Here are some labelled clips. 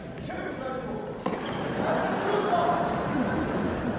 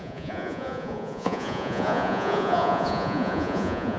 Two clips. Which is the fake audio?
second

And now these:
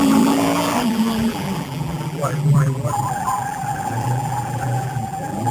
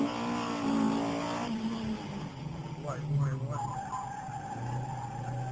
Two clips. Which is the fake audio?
first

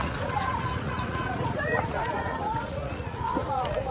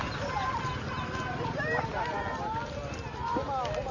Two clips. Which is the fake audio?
first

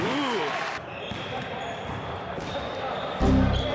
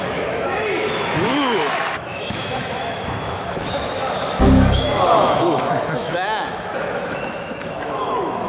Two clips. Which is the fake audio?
second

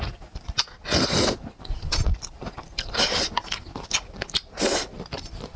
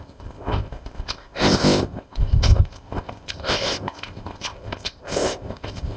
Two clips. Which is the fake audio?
second